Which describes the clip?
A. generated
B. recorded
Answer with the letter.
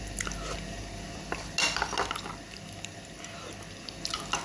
B